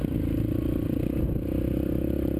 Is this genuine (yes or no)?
yes